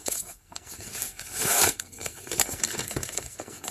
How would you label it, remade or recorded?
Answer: remade